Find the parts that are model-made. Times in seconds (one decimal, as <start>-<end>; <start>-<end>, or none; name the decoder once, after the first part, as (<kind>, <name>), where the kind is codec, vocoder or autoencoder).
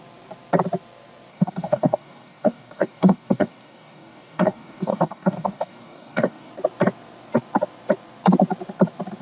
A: 1.3-6.5 (codec, DAC)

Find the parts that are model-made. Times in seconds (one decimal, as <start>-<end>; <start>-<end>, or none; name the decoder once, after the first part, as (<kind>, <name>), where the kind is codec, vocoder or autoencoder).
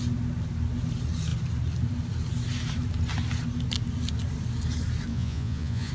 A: 5.1-5.9 (vocoder, Vocos)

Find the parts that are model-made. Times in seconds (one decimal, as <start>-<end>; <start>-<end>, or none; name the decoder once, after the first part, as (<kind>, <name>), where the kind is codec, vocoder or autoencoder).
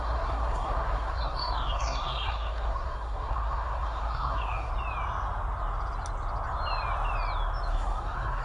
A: 0.0-4.7 (codec, SNAC); 7.7-8.4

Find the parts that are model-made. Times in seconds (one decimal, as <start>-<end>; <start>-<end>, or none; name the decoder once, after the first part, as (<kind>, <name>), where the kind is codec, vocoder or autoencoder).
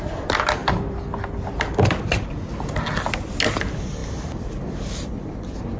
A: none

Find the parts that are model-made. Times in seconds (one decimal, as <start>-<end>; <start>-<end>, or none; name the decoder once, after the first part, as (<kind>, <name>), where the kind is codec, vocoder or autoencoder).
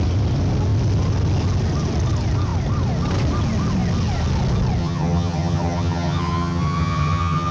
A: 4.8-7.5 (vocoder, HiFi-GAN)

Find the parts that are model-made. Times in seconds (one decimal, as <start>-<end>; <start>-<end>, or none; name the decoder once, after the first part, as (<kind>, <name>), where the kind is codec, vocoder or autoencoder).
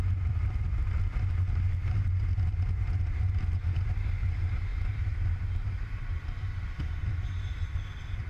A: none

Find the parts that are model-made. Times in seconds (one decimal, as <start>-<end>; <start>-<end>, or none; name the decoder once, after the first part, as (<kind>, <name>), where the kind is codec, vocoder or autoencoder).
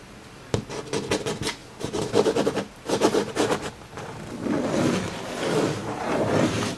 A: 1.6-3.7 (vocoder, BigVGAN v2); 5.8-6.8